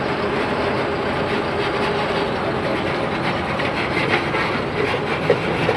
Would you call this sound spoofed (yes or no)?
no